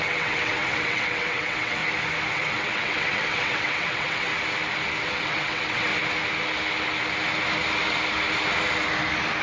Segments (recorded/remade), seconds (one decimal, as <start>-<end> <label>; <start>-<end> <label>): 0.0-1.8 remade; 1.8-2.3 recorded; 2.3-4.3 remade; 4.3-5.0 recorded; 5.0-5.9 remade; 5.9-9.4 recorded

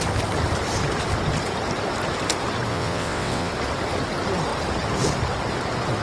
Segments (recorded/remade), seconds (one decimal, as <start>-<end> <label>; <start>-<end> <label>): 0.0-2.7 recorded; 2.7-3.5 remade; 3.5-6.0 recorded

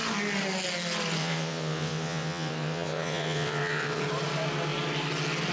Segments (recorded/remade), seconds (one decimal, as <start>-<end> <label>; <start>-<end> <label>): 0.0-1.2 recorded; 1.2-4.0 remade; 4.0-5.5 recorded

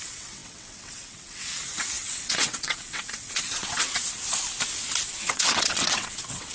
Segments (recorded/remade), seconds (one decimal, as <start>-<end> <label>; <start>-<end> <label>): 0.0-4.0 remade; 4.0-5.1 recorded; 5.1-6.5 remade

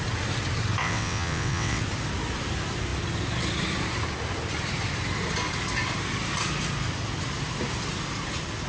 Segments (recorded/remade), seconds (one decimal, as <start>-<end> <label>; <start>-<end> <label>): 0.0-0.8 recorded; 0.8-1.8 remade; 1.8-8.7 recorded

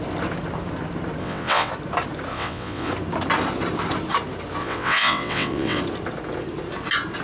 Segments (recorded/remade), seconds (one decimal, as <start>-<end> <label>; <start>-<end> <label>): 0.0-1.2 recorded; 1.2-1.7 remade; 1.7-2.3 recorded; 2.3-2.9 remade; 2.9-4.6 recorded; 4.6-5.8 remade; 5.8-7.2 recorded

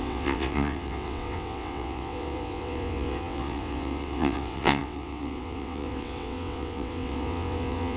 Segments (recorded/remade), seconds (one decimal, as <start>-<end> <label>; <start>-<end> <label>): 0.0-8.0 remade